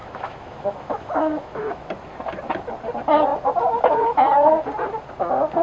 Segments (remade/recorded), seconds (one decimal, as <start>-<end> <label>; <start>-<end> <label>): 0.0-1.9 remade; 1.9-5.6 recorded